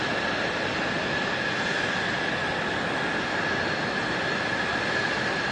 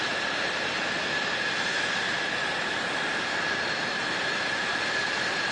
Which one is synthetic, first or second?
second